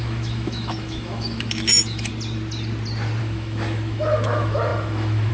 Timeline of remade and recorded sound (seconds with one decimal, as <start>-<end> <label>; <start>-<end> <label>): 0.0-2.1 remade; 2.1-3.2 recorded; 3.2-5.3 remade